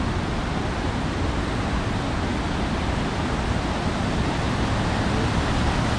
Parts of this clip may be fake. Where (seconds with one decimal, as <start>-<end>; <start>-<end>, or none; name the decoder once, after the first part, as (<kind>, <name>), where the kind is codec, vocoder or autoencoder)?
none